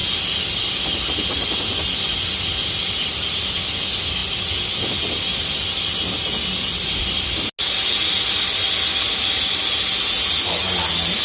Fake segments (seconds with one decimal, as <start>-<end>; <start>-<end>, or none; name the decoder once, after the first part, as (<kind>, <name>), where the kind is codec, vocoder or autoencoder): 2.8-3.5 (vocoder, BigVGAN v2)